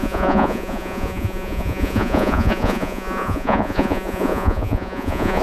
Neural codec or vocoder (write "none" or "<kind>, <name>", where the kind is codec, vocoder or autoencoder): vocoder, Vocos